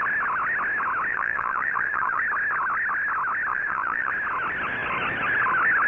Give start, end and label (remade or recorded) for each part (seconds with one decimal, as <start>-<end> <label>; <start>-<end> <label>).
0.0-1.1 recorded; 1.1-2.2 remade; 2.2-3.5 recorded; 3.5-4.1 remade; 4.1-5.9 recorded

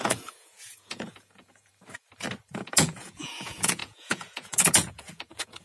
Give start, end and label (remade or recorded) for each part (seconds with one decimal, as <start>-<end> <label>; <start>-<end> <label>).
0.0-1.7 remade; 1.7-2.5 recorded; 2.5-5.6 remade

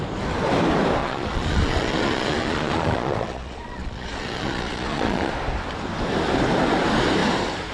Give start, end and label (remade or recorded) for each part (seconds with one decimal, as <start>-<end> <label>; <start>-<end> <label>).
0.0-1.0 recorded; 1.0-5.3 remade; 5.3-7.7 recorded